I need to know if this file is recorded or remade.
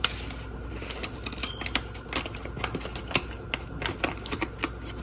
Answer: recorded